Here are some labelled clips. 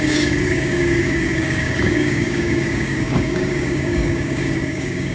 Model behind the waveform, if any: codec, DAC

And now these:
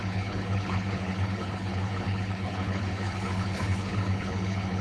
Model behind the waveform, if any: codec, HILCodec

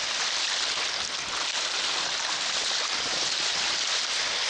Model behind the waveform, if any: none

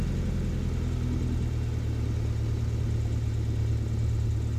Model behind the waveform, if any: none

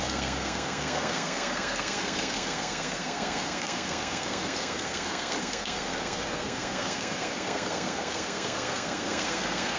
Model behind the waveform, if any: codec, SNAC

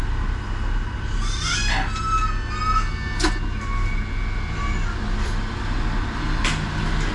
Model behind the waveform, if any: none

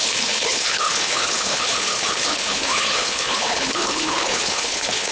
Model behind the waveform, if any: codec, HILCodec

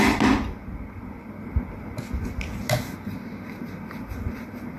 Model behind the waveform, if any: none